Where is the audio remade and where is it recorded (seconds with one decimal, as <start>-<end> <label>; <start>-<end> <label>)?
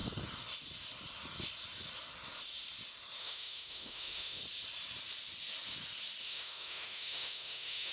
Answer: 0.0-3.2 recorded; 3.2-4.4 remade; 4.4-6.2 recorded; 6.2-7.9 remade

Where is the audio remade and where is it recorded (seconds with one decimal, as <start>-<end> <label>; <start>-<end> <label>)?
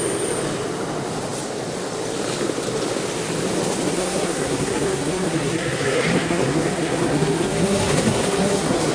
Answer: 0.0-3.9 recorded; 3.9-8.9 remade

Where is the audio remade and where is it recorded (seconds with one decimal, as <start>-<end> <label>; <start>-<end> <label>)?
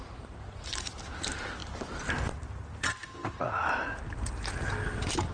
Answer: 0.0-5.3 remade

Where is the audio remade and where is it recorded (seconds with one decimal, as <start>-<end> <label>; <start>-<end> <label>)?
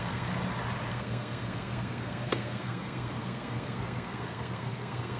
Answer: 0.0-0.4 remade; 0.4-0.9 recorded; 0.9-5.2 remade